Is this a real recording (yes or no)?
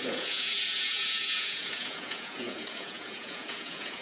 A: no